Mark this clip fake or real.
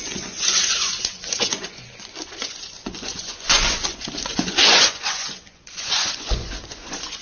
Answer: fake